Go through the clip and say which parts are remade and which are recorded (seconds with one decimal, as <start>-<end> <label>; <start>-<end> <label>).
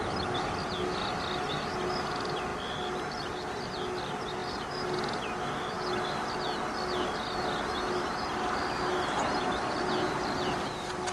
0.0-11.1 recorded